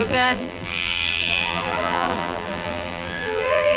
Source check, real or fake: fake